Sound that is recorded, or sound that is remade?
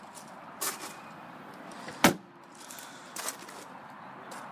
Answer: recorded